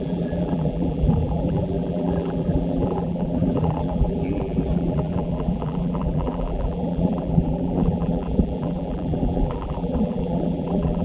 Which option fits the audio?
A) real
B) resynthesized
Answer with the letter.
B